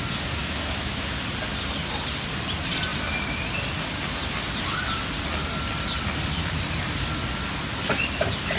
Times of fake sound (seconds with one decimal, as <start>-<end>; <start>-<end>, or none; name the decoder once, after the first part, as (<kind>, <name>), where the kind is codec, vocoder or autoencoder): 0.4-1.2 (autoencoder, DAC-VAE)